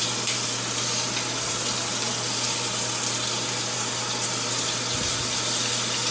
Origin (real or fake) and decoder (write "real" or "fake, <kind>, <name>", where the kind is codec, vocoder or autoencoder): real